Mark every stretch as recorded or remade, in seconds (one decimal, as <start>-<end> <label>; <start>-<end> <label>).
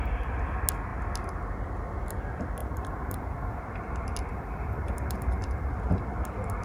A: 0.0-2.6 recorded; 2.6-3.6 remade; 3.6-4.3 recorded; 4.3-5.7 remade; 5.7-6.6 recorded